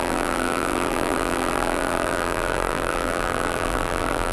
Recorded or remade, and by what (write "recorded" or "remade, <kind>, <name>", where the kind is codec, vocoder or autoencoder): remade, vocoder, BigVGAN v2